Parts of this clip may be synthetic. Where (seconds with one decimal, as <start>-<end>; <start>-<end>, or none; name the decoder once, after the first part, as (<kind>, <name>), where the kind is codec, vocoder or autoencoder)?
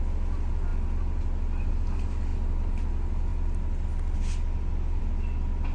none